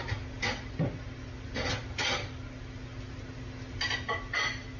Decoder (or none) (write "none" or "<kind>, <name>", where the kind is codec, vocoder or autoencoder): none